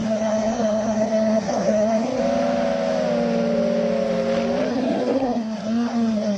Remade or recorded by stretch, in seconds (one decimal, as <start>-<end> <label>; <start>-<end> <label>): 0.0-2.2 remade; 2.2-4.7 recorded; 4.7-6.4 remade